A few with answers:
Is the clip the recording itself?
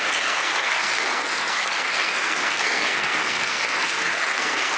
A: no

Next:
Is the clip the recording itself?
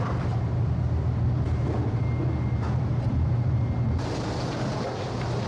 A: yes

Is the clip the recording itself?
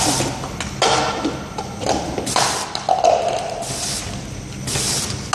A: yes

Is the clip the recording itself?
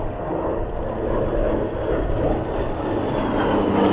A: yes